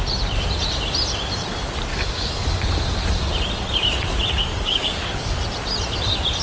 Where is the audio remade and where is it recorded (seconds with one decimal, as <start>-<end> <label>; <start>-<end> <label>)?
0.0-1.9 recorded; 1.9-2.7 remade; 2.7-4.4 recorded; 4.4-5.4 remade; 5.4-6.4 recorded